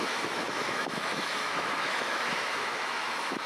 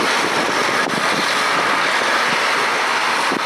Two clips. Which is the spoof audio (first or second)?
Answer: first